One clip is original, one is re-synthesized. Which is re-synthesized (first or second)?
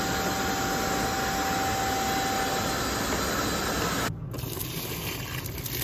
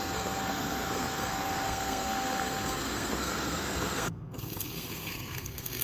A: second